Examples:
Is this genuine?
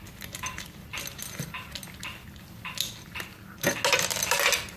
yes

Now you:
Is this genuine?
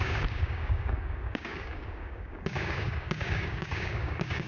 no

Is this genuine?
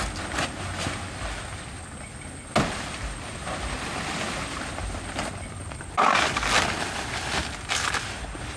yes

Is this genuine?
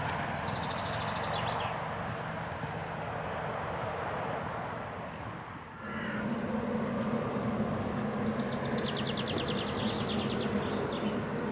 yes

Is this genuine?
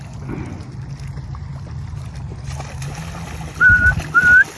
yes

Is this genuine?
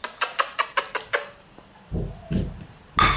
yes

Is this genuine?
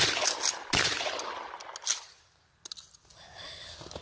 yes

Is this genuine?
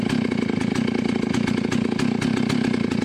yes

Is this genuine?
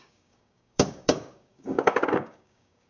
no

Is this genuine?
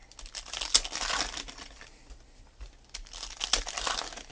yes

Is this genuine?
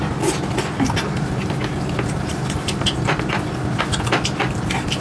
yes